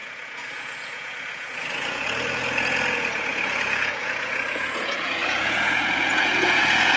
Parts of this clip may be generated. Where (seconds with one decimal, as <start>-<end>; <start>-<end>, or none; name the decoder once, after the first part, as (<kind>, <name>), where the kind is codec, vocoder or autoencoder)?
0.0-7.0 (vocoder, Vocos)